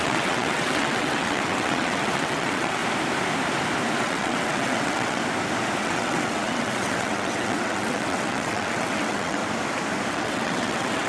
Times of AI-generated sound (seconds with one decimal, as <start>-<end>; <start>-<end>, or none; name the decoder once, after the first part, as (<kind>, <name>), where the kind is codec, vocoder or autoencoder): 0.0-2.8 (vocoder, WaveNeXt); 4.0-5.2; 5.8-9.4; 10.1-11.1